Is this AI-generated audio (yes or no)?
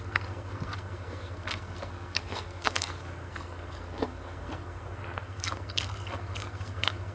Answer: yes